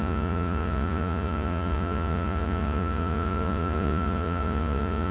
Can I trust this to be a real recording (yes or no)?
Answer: no